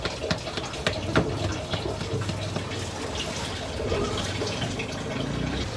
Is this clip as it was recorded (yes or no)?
yes